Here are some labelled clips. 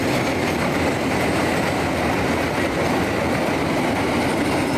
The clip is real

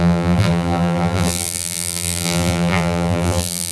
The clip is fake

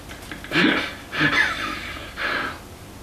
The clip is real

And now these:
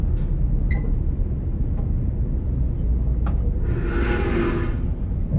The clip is real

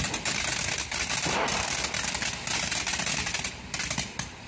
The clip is real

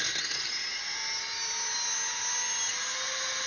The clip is real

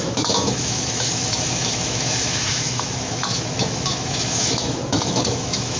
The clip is fake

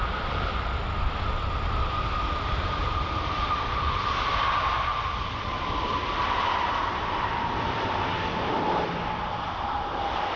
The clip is fake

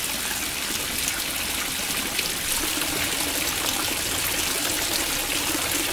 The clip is real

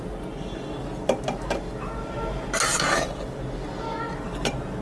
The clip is real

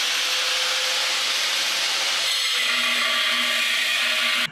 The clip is real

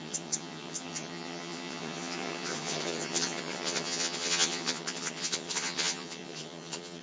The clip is fake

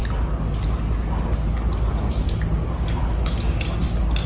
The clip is real